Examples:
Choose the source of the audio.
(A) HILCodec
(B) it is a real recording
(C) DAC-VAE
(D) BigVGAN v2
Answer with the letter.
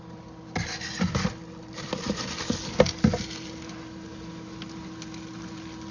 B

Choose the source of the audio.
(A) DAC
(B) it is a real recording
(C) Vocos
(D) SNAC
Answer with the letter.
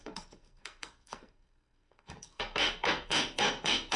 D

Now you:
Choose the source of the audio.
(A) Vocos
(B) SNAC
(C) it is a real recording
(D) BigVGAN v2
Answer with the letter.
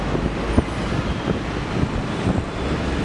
C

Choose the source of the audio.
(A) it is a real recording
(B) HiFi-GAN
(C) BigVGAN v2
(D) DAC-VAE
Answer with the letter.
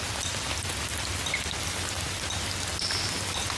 A